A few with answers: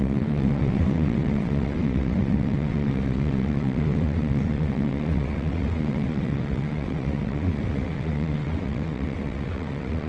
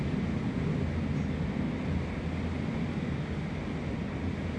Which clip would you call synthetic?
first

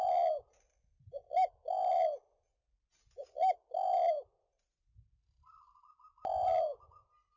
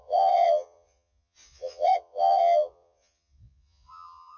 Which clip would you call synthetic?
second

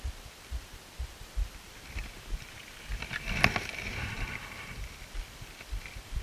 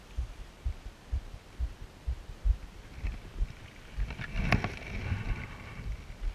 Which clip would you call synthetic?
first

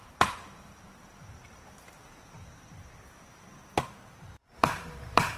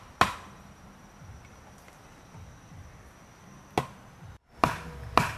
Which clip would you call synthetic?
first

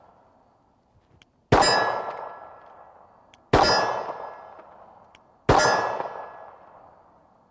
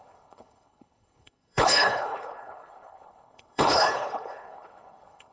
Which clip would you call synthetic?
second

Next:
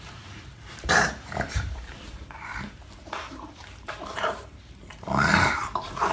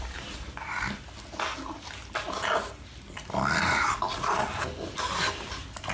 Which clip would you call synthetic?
first